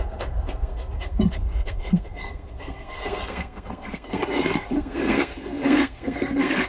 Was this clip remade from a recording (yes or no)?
yes